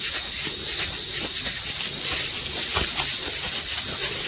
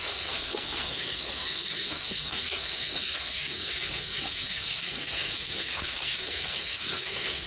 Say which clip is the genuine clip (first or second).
first